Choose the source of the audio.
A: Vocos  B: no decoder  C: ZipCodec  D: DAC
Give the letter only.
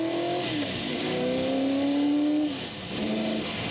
B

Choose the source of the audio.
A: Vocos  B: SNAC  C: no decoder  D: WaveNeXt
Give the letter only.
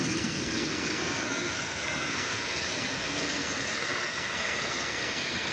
B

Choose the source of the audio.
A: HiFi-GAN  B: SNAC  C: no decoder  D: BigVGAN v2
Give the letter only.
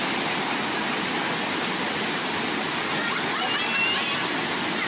C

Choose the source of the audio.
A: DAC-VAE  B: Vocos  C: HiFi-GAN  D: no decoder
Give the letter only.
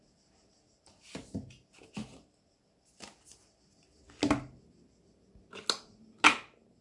D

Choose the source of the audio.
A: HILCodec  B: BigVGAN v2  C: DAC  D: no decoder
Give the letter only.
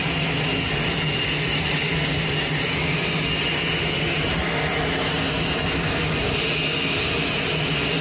D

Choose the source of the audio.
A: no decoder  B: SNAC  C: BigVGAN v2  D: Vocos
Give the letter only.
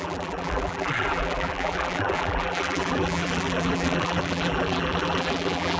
C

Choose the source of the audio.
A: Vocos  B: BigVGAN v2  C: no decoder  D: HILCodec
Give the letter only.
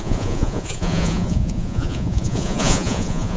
A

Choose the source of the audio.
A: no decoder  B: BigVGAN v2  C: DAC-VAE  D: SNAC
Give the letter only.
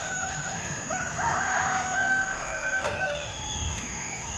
C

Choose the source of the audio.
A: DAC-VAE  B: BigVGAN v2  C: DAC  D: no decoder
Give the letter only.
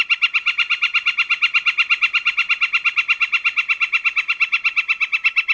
D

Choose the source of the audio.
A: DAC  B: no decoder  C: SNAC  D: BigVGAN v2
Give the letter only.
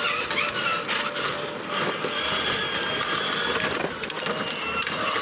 B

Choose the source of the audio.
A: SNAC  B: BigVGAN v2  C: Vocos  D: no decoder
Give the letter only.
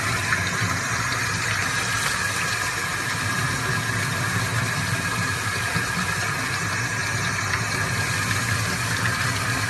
D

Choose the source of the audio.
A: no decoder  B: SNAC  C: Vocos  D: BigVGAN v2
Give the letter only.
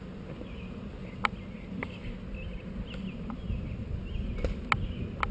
A